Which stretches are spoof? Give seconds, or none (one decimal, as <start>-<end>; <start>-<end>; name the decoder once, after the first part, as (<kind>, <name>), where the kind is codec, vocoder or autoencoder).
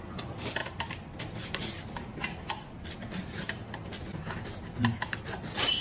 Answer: none